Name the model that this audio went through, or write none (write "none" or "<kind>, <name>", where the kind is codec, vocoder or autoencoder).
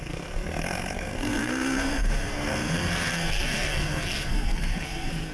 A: codec, SNAC